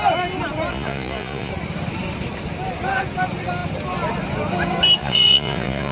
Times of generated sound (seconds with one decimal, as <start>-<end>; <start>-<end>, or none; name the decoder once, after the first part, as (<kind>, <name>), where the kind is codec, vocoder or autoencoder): 0.7-1.5 (vocoder, Vocos); 5.0-5.9